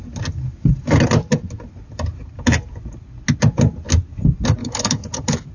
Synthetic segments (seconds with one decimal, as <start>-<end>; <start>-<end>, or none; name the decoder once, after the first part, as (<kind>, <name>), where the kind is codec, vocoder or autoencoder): 4.6-5.5 (autoencoder, DAC-VAE)